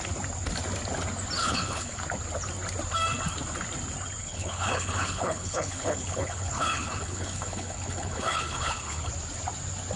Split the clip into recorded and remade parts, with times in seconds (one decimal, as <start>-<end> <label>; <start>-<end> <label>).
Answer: 0.0-1.4 recorded; 1.4-2.0 remade; 2.0-4.2 recorded; 4.2-9.1 remade; 9.1-10.0 recorded